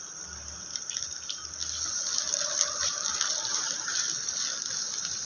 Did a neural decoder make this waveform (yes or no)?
yes